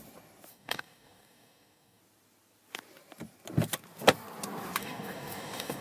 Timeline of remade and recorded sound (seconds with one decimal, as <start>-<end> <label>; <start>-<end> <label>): 0.0-0.5 recorded; 0.5-2.0 remade; 2.0-4.8 recorded; 4.8-5.8 remade